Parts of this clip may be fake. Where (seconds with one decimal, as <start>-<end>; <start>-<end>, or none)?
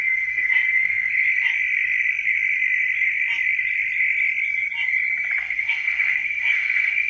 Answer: 0.0-1.1; 5.4-7.1